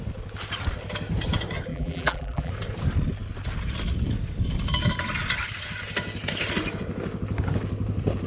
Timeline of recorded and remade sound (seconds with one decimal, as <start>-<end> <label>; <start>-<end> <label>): 0.0-1.7 recorded; 1.7-2.5 remade; 2.5-8.3 recorded